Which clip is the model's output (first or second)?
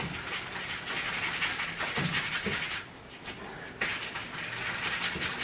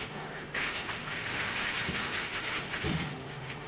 second